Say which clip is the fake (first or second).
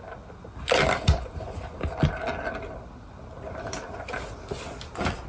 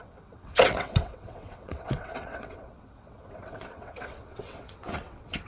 second